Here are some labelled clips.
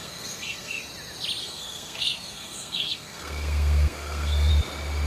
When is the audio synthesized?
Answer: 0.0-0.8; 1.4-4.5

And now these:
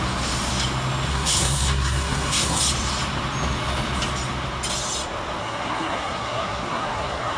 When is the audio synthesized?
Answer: 1.1-2.6; 5.4-7.4

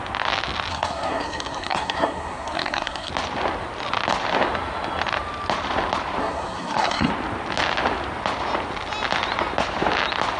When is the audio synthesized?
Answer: 0.7-3.1; 6.2-7.1

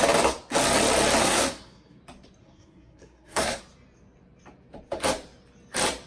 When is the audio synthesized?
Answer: 1.2-2.0; 2.4-3.6